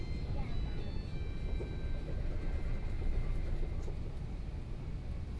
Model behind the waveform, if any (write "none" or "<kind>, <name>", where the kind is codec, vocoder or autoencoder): none